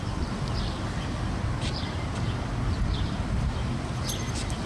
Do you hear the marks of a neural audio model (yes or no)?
yes